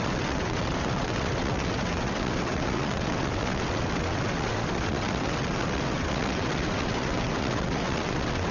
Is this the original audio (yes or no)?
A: no